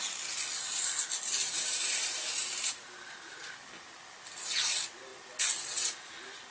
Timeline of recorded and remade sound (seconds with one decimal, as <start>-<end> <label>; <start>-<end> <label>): 0.0-1.4 recorded; 1.4-3.4 remade; 3.4-6.5 recorded